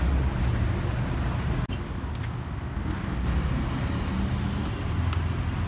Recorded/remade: recorded